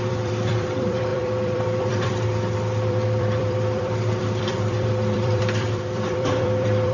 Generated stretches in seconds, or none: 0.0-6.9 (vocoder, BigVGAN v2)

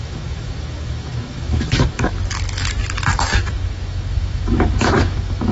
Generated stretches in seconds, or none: 0.0-2.1 (autoencoder, DAC-VAE); 3.2-5.5